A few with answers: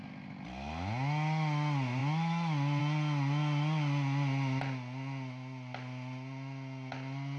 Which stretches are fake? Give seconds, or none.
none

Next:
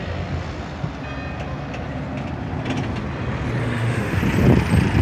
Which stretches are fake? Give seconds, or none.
3.6-4.2 (autoencoder, DAC-VAE)